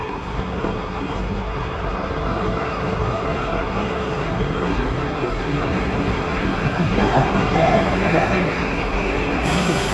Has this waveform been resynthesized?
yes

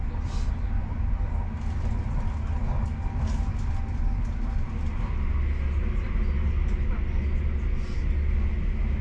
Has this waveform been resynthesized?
no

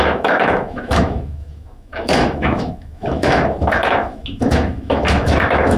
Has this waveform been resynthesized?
yes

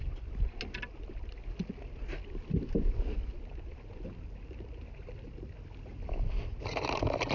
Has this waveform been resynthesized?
no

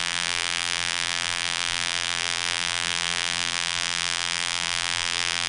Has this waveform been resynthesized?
yes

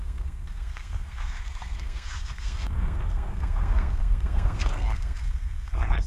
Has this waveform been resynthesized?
yes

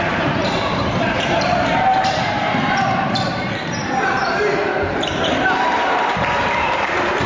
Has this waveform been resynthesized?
yes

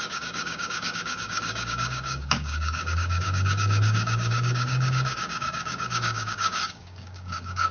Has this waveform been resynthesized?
yes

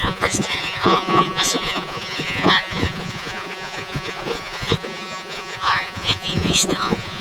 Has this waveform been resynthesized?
yes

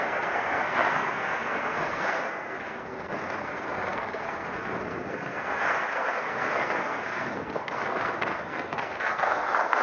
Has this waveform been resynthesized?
yes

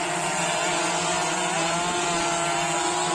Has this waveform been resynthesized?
no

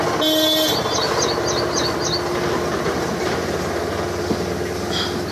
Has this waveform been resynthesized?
no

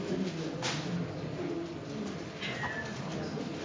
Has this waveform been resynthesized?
no